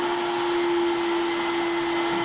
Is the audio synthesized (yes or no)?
no